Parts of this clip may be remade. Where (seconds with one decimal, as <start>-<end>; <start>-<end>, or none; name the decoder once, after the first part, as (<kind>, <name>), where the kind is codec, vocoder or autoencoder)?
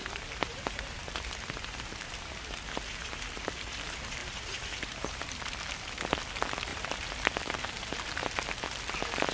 0.0-2.3 (vocoder, BigVGAN v2); 4.2-5.2; 6.7-8.5